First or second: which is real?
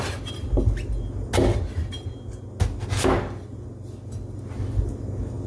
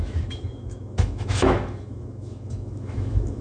first